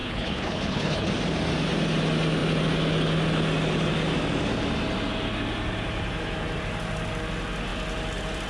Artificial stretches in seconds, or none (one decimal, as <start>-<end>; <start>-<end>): 0.0-1.1